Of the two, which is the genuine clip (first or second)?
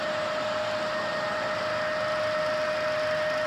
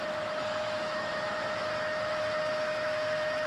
first